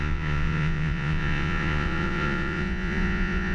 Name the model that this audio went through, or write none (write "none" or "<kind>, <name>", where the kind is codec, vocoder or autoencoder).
vocoder, Vocos